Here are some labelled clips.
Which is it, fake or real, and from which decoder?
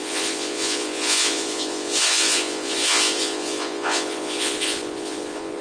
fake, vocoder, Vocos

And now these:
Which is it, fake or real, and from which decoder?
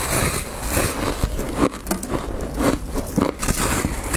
real